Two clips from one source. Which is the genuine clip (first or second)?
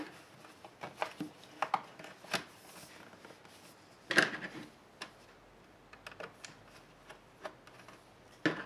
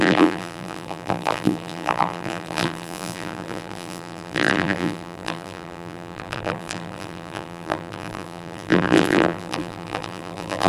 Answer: first